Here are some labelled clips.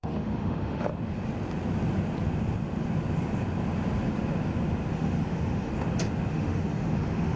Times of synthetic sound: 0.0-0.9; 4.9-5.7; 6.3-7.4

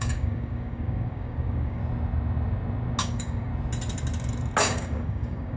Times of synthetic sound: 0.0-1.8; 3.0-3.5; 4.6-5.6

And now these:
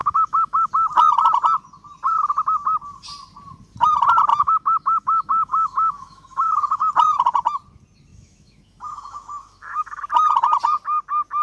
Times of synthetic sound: 0.0-0.7; 4.3-6.9; 8.1-10.0

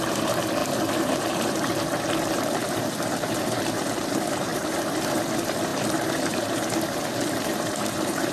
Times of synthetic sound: 0.0-8.3